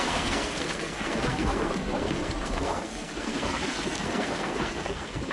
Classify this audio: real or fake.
fake